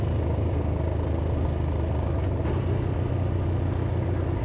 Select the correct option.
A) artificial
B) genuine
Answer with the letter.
B